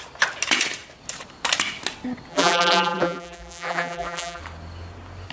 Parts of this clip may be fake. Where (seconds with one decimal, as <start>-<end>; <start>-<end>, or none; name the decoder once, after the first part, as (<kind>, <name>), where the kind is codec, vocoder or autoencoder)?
2.3-4.4 (vocoder, BigVGAN v2)